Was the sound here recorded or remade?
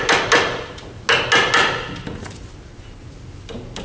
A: recorded